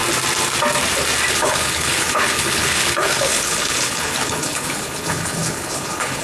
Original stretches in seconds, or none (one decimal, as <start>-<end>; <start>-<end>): 0.0-1.3